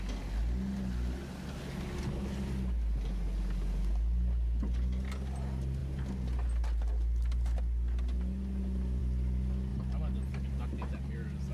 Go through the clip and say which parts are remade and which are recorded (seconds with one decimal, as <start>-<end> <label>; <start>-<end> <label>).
0.0-11.5 recorded